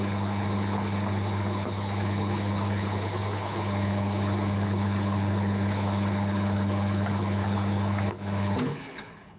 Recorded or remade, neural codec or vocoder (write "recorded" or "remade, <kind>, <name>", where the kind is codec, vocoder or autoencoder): remade, codec, HILCodec